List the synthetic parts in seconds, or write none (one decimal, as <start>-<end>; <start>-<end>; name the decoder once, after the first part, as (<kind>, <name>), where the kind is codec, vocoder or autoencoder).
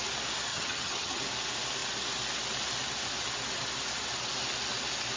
0.5-1.2 (vocoder, HiFi-GAN)